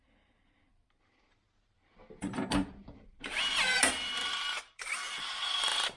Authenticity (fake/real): fake